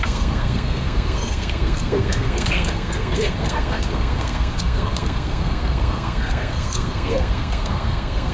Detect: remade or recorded remade